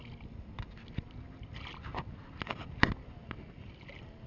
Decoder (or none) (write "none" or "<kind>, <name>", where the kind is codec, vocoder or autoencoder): none